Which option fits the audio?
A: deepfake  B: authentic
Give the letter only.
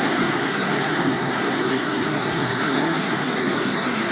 A